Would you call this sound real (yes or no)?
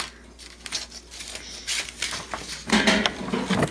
yes